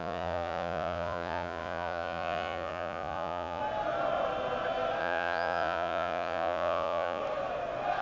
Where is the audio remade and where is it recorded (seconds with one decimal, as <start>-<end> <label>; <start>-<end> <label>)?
0.0-3.6 remade; 3.6-5.0 recorded; 5.0-7.2 remade; 7.2-8.0 recorded